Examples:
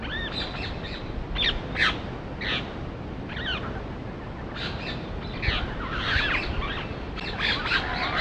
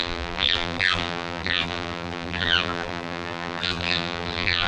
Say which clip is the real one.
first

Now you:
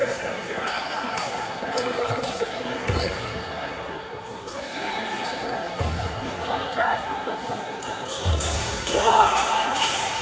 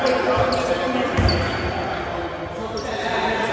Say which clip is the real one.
second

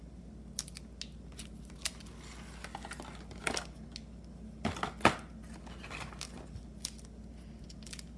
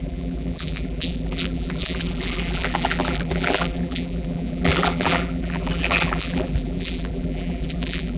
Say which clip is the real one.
first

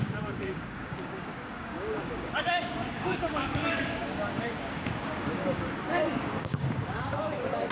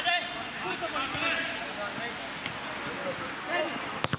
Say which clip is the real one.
second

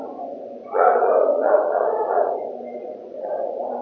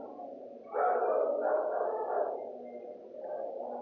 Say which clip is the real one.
second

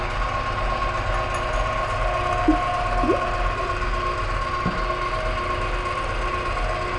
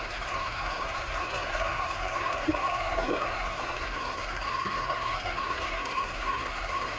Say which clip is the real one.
first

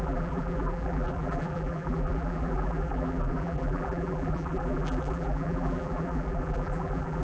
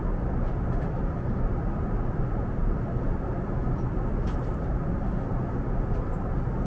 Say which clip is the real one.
second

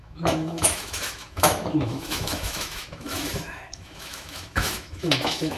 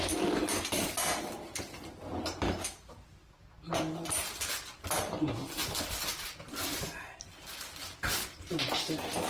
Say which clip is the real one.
second